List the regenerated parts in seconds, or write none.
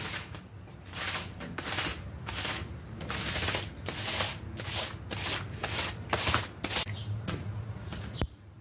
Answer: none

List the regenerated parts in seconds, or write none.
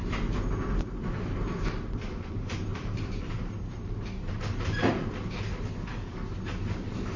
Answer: 2.7-4.9 (vocoder, BigVGAN v2)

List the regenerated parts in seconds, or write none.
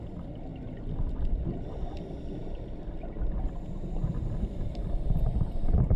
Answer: 2.4-4.8 (vocoder, BigVGAN v2)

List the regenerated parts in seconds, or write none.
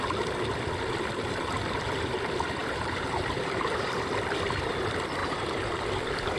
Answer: 2.6-3.9 (vocoder, BigVGAN v2); 5.2-5.7